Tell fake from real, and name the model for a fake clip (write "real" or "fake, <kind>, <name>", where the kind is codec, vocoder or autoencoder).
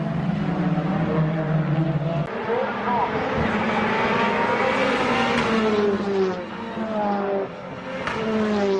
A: real